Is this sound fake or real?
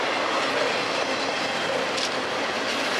real